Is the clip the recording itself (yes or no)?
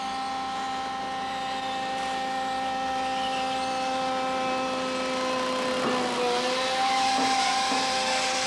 yes